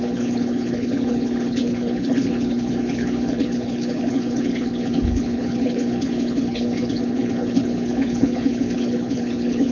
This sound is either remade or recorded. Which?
remade